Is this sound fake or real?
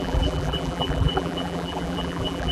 fake